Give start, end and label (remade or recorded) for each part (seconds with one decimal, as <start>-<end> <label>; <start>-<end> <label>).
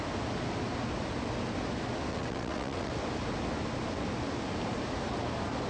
0.0-2.1 recorded; 2.1-2.9 remade; 2.9-5.7 recorded